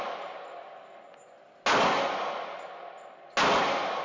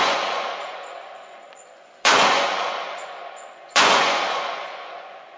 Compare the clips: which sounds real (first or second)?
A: first